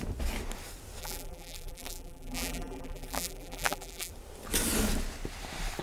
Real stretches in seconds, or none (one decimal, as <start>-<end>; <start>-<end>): 0.0-1.0; 4.1-5.8